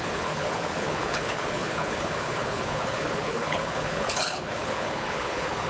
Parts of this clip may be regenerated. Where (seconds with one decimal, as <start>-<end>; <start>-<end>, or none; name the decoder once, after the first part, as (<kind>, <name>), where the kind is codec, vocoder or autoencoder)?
0.0-5.7 (codec, HILCodec)